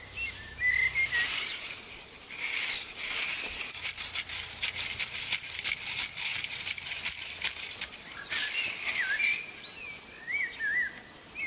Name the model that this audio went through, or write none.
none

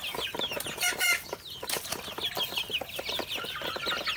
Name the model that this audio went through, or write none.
none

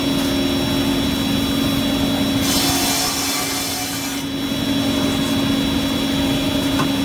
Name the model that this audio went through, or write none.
none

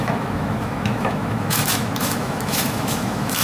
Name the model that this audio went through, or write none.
autoencoder, DAC-VAE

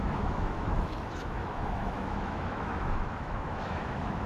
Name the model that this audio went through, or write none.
autoencoder, DAC-VAE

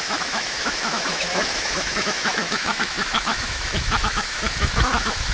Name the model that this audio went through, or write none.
autoencoder, DAC-VAE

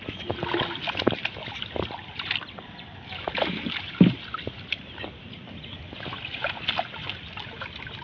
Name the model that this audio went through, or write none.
none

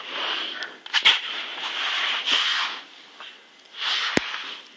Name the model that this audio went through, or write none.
none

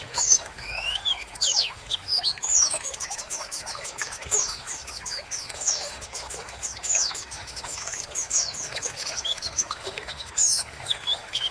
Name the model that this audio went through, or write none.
autoencoder, DAC-VAE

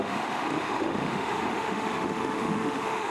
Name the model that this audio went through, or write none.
autoencoder, DAC-VAE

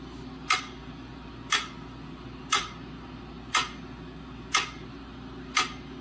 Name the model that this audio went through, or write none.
none